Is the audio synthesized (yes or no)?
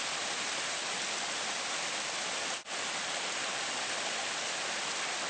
no